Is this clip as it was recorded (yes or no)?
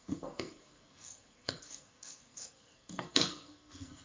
no